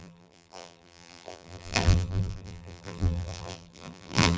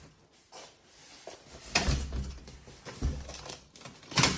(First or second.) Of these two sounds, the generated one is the first